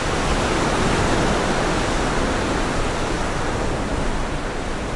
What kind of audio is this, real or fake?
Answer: real